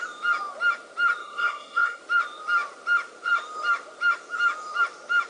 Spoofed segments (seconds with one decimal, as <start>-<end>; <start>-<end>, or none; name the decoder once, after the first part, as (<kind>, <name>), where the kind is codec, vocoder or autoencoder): 1.2-2.0 (codec, SNAC)